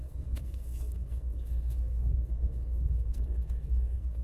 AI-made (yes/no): yes